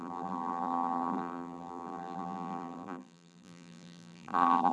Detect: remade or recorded remade